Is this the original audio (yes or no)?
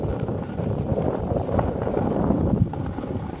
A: yes